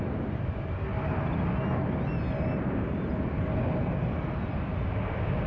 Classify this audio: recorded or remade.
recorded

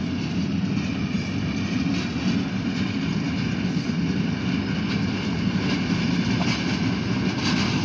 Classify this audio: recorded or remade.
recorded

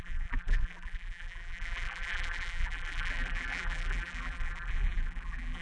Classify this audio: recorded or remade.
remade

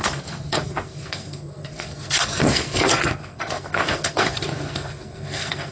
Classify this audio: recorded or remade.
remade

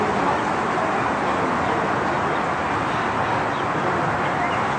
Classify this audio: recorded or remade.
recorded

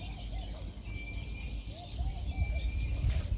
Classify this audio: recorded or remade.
recorded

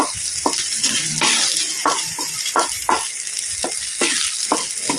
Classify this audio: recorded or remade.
recorded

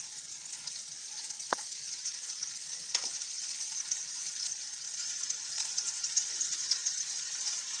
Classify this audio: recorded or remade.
remade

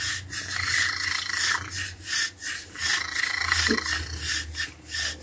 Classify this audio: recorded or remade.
recorded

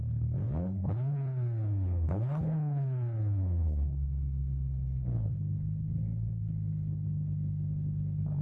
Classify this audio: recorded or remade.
remade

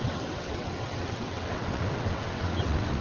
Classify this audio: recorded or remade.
remade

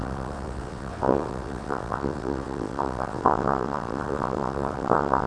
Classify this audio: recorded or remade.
remade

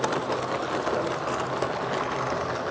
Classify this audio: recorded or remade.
recorded